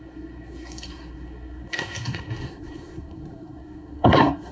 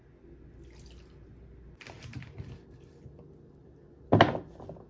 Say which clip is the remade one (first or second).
first